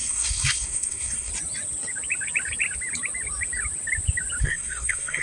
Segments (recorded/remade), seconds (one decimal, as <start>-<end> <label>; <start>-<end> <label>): 0.0-1.3 remade; 1.3-4.4 recorded; 4.4-5.2 remade